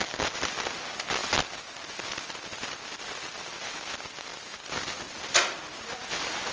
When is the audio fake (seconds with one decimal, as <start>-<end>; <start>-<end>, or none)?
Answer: none